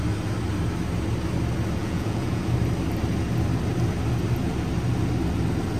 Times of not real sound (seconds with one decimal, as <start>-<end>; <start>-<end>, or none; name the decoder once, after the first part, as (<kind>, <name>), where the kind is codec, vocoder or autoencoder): 1.8-2.5 (vocoder, Vocos)

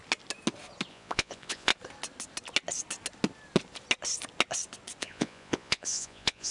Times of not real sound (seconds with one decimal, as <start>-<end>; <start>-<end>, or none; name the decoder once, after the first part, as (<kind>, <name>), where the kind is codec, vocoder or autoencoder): 0.9-1.7 (vocoder, Vocos); 5.0-6.5

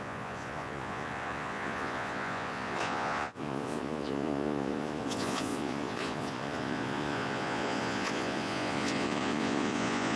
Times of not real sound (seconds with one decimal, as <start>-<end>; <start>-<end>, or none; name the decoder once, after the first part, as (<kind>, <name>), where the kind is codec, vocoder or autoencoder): 0.0-10.2 (vocoder, Vocos)

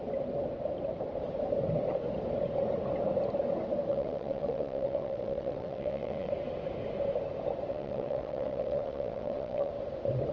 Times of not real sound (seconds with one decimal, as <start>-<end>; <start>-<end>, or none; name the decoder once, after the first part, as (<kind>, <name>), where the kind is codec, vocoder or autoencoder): 3.9-6.3 (vocoder, WaveNeXt); 7.7-9.7

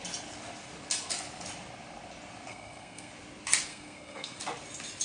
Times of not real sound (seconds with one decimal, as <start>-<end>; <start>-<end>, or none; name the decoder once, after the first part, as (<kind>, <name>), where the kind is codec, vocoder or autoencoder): 2.5-3.1 (codec, SNAC); 3.7-4.4

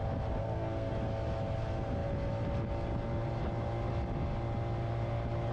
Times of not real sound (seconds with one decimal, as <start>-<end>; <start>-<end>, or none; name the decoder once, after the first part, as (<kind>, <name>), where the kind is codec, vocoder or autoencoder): 0.4-0.9 (codec, SNAC)

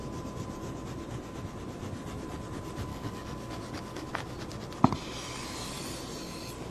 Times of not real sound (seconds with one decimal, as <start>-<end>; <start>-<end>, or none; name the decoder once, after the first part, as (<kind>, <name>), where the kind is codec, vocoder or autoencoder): 2.9-4.1 (codec, DAC)